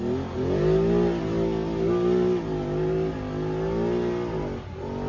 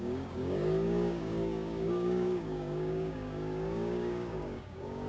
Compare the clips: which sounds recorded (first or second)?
first